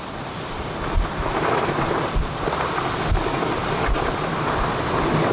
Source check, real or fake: real